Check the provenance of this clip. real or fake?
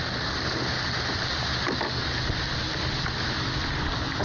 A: real